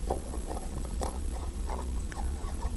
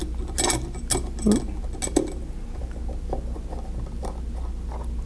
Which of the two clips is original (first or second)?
second